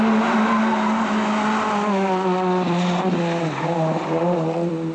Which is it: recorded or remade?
recorded